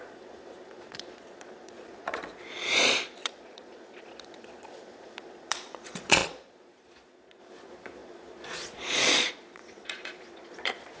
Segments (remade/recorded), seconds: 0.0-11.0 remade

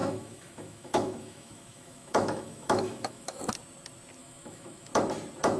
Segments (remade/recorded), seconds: 0.0-3.4 remade; 3.4-4.2 recorded; 4.2-4.9 remade; 4.9-5.6 recorded

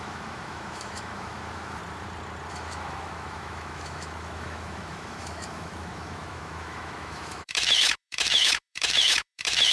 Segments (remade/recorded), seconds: 0.0-1.8 remade; 1.8-2.5 recorded; 2.5-9.7 remade

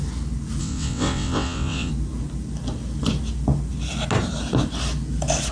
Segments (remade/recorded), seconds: 0.0-0.6 recorded; 0.6-1.9 remade; 1.9-5.5 recorded